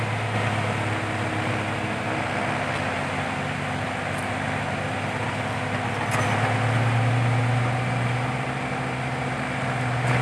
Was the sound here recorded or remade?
recorded